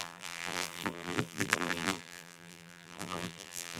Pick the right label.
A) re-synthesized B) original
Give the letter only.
A